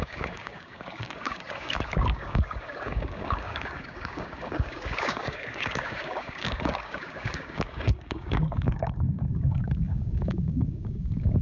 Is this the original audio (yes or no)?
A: no